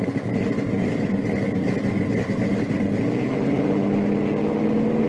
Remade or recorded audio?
recorded